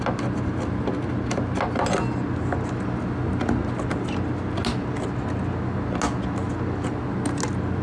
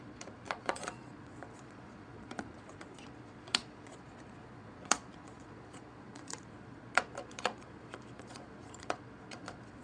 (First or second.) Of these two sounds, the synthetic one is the second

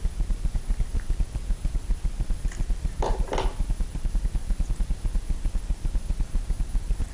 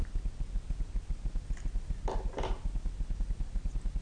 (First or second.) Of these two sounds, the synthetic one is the first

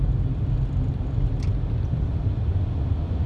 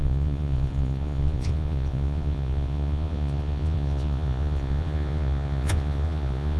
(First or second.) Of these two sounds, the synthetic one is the second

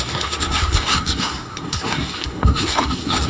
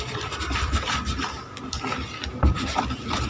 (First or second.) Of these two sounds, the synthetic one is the first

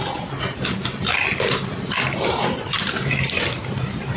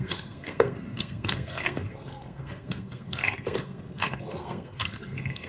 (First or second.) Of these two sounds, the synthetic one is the second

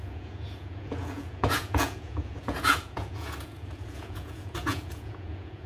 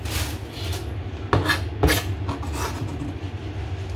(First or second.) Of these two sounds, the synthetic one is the first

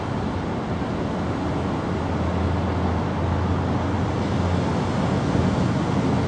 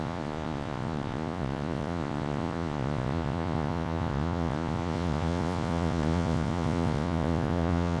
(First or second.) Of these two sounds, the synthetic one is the second